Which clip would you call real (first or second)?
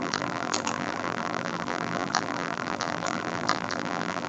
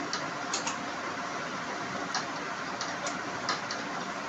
second